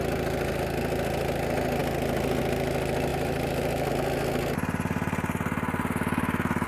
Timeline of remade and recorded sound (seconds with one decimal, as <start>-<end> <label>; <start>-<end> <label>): 0.0-3.1 recorded; 3.1-3.9 remade; 3.9-6.7 recorded

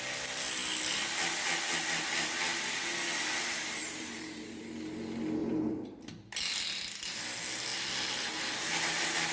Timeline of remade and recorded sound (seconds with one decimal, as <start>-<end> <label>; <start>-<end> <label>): 0.0-3.8 recorded; 3.8-4.7 remade; 4.7-5.4 recorded; 5.4-6.1 remade; 6.1-9.3 recorded

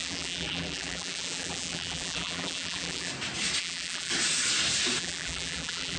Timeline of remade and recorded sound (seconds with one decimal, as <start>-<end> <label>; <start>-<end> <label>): 0.0-3.1 remade; 3.1-3.6 recorded; 3.6-4.1 remade; 4.1-5.0 recorded; 5.0-6.0 remade